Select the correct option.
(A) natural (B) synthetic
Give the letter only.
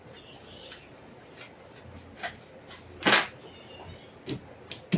A